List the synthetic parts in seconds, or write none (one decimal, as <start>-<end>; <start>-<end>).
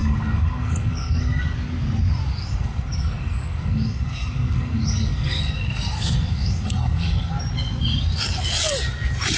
0.0-1.4; 2.3-7.3